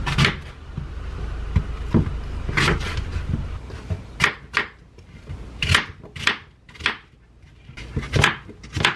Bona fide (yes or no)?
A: yes